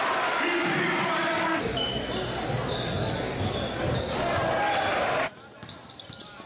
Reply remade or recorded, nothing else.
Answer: recorded